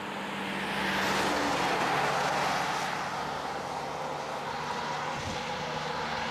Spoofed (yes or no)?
no